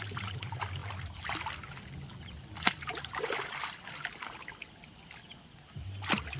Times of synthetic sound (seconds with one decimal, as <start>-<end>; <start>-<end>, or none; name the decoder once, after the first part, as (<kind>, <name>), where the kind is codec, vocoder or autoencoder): none